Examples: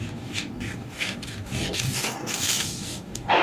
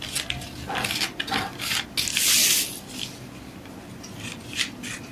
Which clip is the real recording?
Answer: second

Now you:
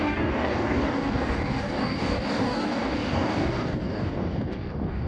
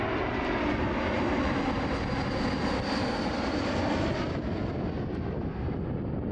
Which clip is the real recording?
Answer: second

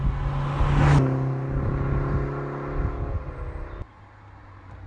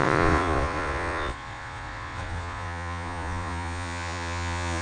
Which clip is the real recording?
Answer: first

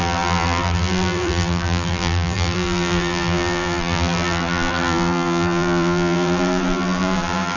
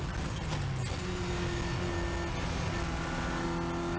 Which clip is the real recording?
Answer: second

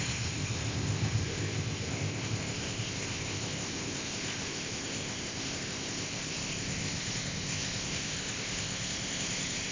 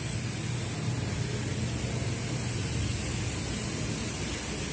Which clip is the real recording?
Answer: second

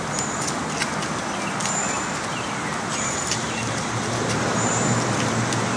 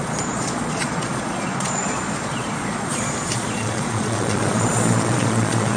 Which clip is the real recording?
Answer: first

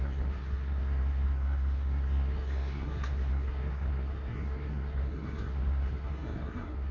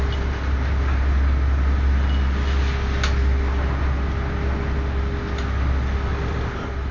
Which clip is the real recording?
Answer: second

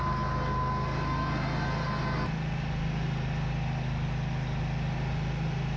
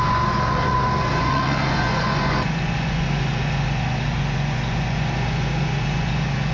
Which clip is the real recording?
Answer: first